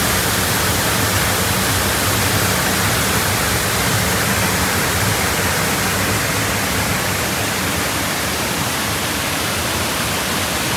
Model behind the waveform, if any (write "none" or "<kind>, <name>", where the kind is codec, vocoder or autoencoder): none